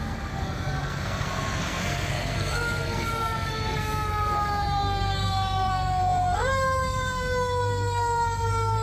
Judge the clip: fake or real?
fake